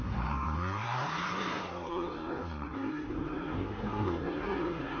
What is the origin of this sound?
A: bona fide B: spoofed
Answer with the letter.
B